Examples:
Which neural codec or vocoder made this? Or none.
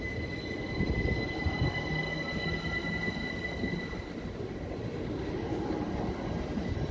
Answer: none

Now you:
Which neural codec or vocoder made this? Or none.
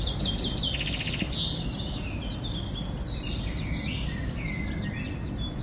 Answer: none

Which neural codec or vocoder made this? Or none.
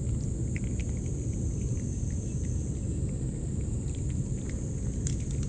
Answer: none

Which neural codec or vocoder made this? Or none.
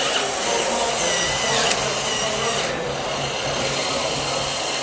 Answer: none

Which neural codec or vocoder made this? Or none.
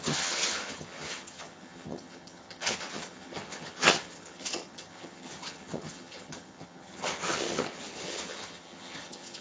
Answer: vocoder, HiFi-GAN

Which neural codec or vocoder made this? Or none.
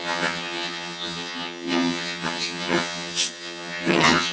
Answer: vocoder, HiFi-GAN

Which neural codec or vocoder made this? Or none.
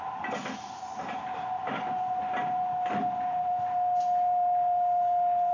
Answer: none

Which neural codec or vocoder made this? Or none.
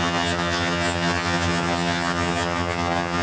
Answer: vocoder, HiFi-GAN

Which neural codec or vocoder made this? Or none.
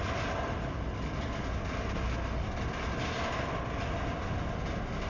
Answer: none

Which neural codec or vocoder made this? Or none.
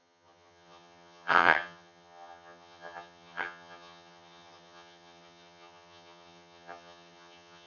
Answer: vocoder, HiFi-GAN